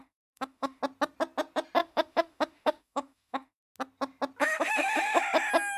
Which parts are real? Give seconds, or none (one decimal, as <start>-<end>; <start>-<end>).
0.8-1.8; 3.7-4.4; 5.2-5.8